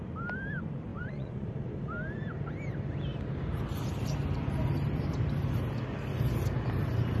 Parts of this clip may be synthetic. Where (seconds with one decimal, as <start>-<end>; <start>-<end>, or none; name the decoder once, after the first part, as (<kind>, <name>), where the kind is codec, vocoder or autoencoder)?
0.9-1.5 (vocoder, Vocos)